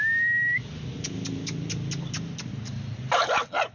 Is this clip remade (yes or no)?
no